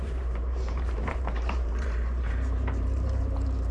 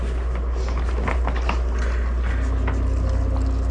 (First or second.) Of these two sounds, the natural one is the second